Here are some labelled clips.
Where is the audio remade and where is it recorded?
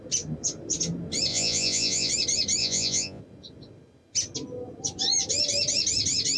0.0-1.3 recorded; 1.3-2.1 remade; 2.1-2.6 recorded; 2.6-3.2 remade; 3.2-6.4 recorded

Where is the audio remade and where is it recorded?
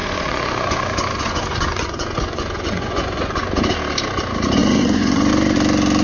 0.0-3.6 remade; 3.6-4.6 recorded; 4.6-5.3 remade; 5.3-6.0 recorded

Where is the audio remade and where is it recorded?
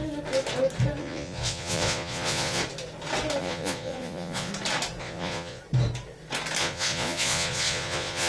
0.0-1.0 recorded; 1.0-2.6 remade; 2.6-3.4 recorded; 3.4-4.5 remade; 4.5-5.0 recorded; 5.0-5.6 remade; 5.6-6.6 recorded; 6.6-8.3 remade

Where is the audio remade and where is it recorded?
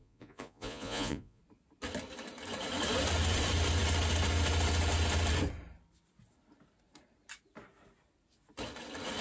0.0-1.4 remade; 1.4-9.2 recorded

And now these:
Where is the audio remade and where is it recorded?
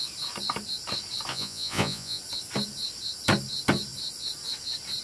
0.0-1.3 recorded; 1.3-2.2 remade; 2.2-5.0 recorded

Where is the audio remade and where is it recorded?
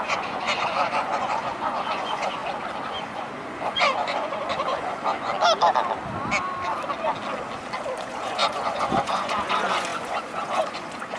0.0-2.4 remade; 2.4-2.9 recorded; 2.9-5.3 remade; 5.3-8.0 recorded; 8.0-11.2 remade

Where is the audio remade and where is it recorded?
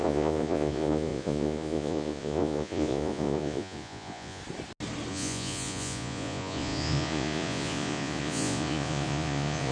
0.0-4.4 remade; 4.4-5.1 recorded; 5.1-9.7 remade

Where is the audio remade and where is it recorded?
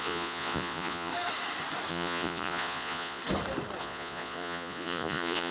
0.0-1.1 remade; 1.1-1.9 recorded; 1.9-3.2 remade; 3.2-3.8 recorded; 3.8-5.5 remade